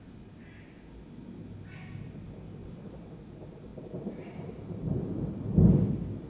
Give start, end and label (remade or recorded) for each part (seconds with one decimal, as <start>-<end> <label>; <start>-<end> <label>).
0.0-3.7 recorded; 3.7-5.5 remade; 5.5-6.3 recorded